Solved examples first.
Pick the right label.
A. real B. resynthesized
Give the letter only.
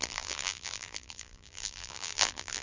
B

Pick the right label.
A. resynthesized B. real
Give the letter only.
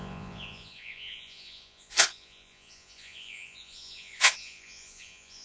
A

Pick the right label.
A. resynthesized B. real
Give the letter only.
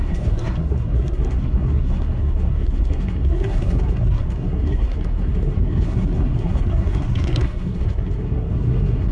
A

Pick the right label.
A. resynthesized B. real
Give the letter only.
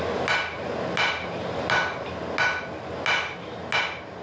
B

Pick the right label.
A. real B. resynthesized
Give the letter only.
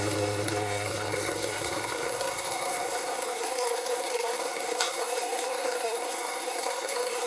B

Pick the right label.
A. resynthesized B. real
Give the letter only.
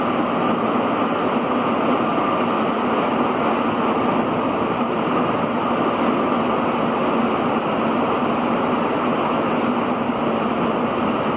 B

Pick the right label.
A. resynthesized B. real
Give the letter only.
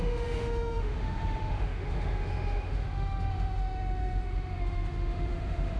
A